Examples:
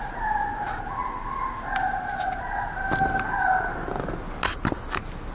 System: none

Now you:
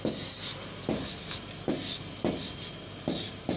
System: none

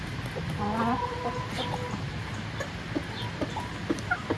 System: none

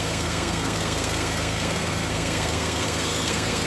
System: codec, SNAC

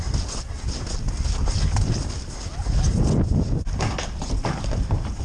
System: none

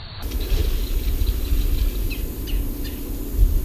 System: none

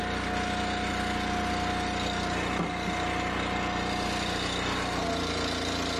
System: none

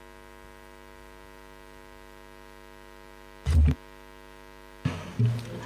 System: none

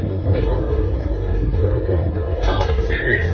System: codec, SNAC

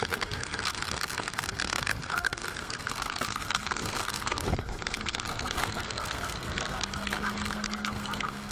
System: codec, SNAC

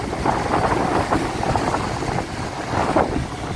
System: none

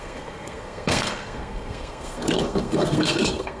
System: codec, SNAC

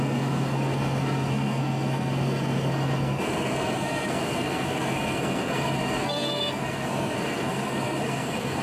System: codec, SNAC